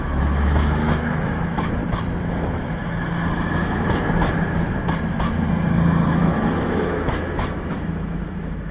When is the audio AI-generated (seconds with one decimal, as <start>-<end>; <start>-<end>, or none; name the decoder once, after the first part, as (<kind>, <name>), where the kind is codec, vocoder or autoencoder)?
0.0-1.8 (autoencoder, DAC-VAE); 2.3-2.8; 6.2-8.7